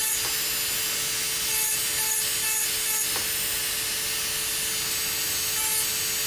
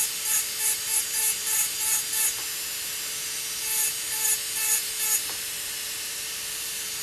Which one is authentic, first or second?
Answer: first